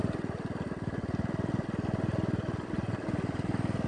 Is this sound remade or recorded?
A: recorded